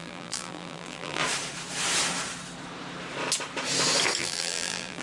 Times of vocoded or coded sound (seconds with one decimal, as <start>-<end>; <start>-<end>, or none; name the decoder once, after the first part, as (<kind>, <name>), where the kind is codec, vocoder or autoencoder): 0.0-1.2 (vocoder, BigVGAN v2); 4.2-5.0